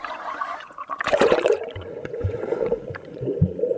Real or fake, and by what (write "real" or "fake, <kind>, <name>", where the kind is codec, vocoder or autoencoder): fake, vocoder, Vocos